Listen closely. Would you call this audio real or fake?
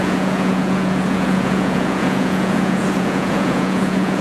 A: fake